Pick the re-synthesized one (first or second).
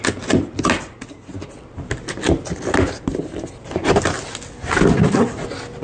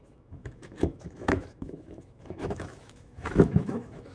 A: second